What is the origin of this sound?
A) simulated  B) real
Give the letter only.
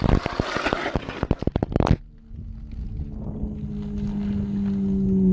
B